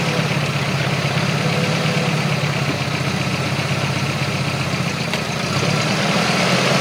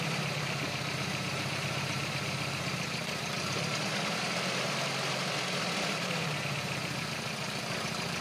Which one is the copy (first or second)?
second